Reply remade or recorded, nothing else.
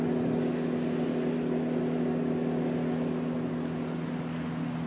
recorded